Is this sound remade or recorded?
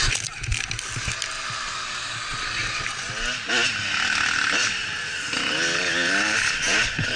recorded